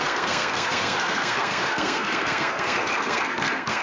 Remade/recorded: remade